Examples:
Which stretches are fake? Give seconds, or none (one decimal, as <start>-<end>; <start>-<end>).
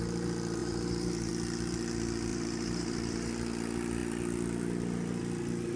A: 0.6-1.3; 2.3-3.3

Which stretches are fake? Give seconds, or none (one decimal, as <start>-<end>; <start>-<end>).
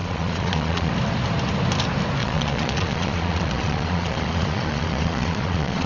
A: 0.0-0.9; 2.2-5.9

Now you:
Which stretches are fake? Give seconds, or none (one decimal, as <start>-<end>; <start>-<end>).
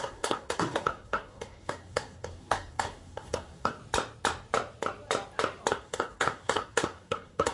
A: 0.0-3.8; 5.7-7.5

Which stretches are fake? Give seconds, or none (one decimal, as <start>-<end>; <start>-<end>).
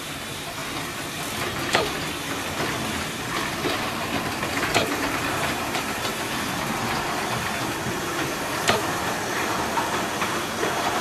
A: 0.0-0.6; 2.9-9.5; 10.2-11.0